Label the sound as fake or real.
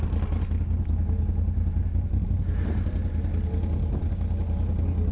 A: real